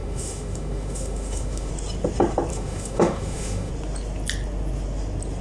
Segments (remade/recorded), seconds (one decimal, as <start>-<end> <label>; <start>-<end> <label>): 0.0-1.7 remade; 1.7-2.5 recorded; 2.5-3.7 remade; 3.7-5.4 recorded